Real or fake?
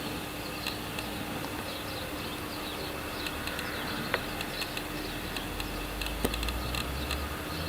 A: real